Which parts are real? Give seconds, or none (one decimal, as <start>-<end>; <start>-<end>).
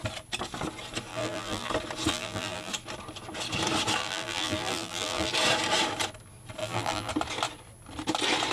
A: 0.0-1.1; 1.7-2.1; 2.7-4.0; 5.3-6.6; 7.1-8.5